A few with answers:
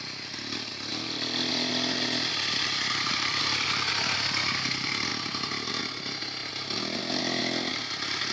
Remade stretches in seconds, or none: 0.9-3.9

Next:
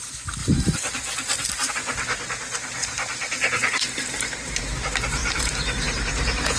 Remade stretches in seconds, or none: 0.4-1.7; 2.8-4.6; 5.2-5.8

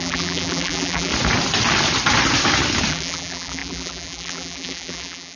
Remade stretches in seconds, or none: 0.0-1.1; 2.9-5.4

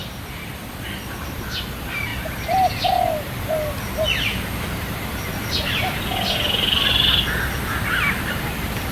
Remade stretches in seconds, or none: 0.0-0.5